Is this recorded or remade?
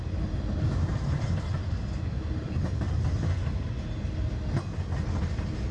recorded